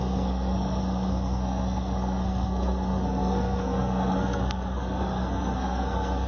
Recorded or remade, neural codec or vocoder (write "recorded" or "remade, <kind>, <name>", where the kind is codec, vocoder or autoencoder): remade, codec, SNAC